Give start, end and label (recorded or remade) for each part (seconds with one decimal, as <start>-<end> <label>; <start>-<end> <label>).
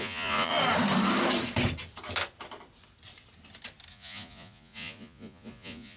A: 0.0-0.5 remade; 0.5-3.9 recorded; 3.9-6.0 remade